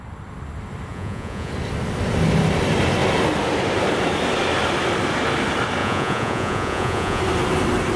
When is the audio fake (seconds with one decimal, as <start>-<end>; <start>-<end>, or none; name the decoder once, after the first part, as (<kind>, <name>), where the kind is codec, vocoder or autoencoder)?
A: 0.9-1.5 (vocoder, Vocos); 5.8-7.2